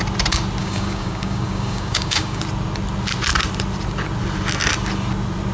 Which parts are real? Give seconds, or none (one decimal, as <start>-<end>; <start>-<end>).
0.0-0.6; 2.4-5.5